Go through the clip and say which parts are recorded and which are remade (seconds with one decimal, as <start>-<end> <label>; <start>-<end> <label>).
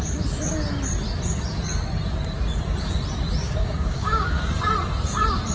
0.0-3.4 recorded; 3.4-4.5 remade; 4.5-5.5 recorded